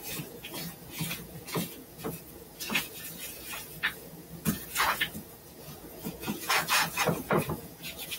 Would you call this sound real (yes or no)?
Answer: no